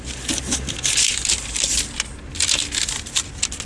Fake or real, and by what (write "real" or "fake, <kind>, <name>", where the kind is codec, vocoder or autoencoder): real